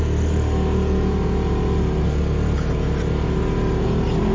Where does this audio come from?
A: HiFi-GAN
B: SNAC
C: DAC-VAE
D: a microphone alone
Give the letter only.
D